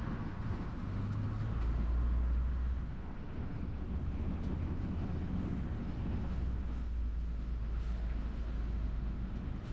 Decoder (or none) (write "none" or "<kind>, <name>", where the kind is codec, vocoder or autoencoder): autoencoder, DAC-VAE